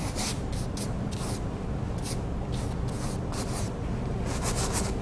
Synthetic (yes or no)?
no